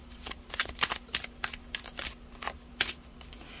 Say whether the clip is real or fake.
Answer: real